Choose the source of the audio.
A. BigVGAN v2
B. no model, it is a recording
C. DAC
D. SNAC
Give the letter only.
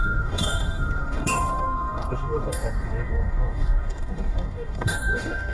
C